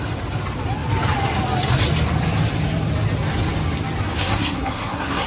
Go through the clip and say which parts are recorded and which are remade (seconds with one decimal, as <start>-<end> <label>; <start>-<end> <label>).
0.0-4.2 recorded; 4.2-5.3 remade